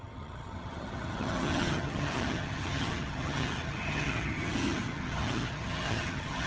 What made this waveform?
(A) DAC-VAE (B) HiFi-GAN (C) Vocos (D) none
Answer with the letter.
B